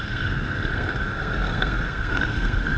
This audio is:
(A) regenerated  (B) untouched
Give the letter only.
A